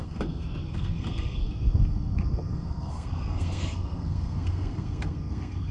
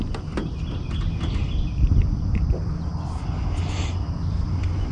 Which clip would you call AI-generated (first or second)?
first